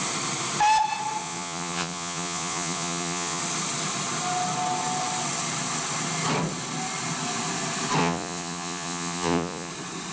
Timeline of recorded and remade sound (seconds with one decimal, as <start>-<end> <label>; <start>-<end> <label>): 0.0-1.2 recorded; 1.2-3.4 remade; 3.4-8.0 recorded; 8.0-9.7 remade; 9.7-10.1 recorded